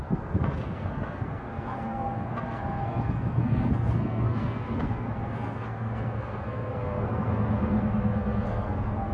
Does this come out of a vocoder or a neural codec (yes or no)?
yes